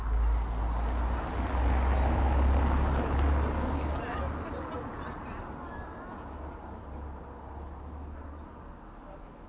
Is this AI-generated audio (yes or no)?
no